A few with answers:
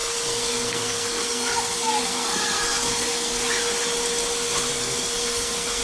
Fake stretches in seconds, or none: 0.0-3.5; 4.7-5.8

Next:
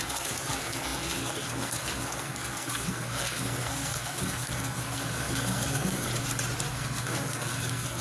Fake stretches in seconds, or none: 0.0-6.1; 6.7-8.0

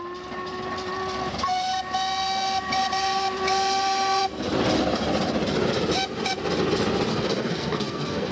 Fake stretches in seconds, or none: 7.1-8.3